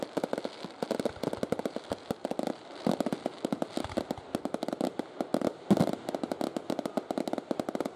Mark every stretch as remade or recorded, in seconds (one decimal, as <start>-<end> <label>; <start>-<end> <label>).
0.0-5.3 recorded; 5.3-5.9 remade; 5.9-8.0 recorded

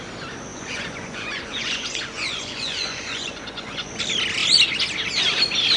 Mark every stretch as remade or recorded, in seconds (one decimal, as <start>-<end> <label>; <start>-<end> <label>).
0.0-0.5 recorded; 0.5-4.0 remade; 4.0-5.8 recorded

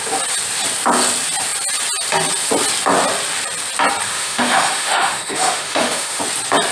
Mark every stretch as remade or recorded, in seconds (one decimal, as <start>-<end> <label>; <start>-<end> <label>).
0.0-4.1 recorded; 4.1-6.2 remade; 6.2-6.7 recorded

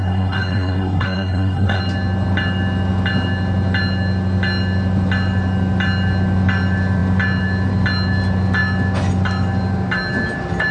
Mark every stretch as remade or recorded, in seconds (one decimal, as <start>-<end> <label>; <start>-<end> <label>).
0.0-1.8 remade; 1.8-10.7 recorded